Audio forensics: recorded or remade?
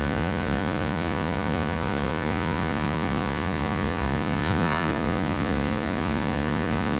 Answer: remade